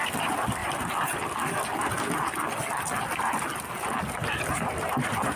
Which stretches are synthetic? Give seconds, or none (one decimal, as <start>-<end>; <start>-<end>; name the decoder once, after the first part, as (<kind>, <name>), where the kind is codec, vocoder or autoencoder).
none